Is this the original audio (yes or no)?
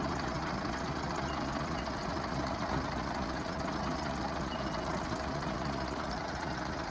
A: no